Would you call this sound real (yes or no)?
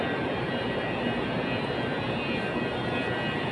yes